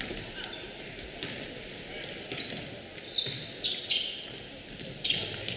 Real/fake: real